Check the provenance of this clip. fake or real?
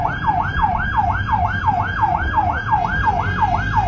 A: real